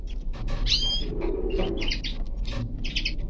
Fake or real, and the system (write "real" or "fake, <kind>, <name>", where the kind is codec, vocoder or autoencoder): real